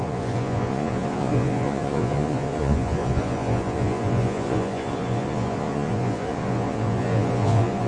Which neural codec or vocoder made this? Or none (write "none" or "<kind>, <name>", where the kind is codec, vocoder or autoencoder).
vocoder, Vocos